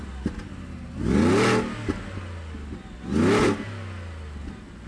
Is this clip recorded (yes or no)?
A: yes